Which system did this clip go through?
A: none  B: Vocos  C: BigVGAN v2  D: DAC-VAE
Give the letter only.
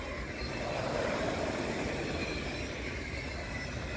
A